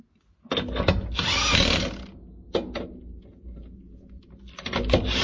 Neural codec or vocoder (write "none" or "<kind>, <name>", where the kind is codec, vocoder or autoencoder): none